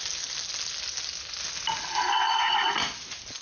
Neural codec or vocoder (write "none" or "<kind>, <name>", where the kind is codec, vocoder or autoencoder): none